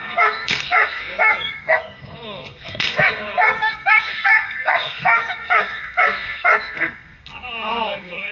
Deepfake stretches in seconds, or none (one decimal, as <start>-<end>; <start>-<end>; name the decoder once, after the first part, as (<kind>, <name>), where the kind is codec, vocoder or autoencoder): 0.0-8.3 (codec, SNAC)